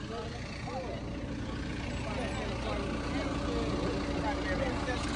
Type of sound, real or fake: real